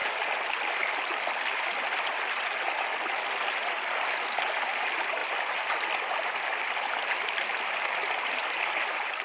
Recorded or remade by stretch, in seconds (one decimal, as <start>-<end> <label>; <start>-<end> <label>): 0.0-9.2 recorded